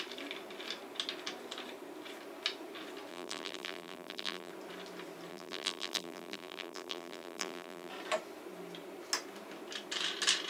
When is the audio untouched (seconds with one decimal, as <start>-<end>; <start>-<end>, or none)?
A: 0.0-3.1; 4.5-5.3; 7.9-10.5